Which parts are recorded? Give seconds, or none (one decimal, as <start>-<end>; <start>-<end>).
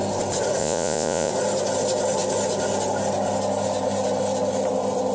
0.0-0.6; 1.3-5.1